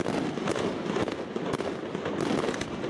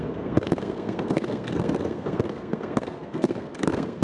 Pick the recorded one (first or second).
first